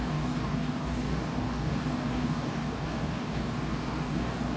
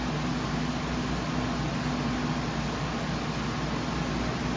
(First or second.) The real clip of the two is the second